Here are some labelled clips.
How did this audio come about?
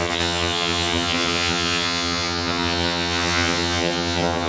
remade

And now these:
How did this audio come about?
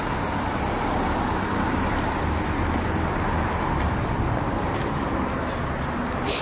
recorded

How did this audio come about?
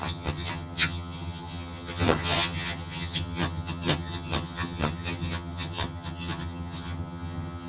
remade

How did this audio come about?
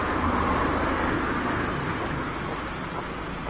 recorded